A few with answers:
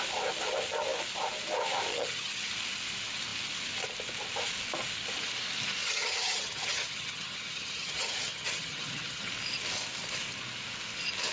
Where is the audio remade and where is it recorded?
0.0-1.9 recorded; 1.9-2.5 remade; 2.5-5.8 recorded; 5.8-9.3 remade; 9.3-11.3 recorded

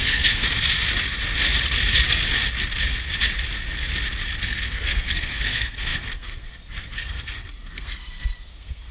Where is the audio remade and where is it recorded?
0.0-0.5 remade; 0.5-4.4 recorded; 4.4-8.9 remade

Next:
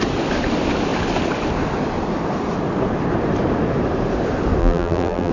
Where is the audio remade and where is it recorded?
0.0-4.6 recorded; 4.6-5.3 remade

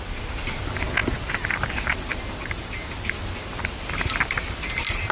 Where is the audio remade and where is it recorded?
0.0-5.1 recorded